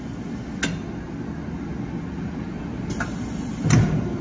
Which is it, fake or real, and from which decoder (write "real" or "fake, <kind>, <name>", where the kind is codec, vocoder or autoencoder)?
real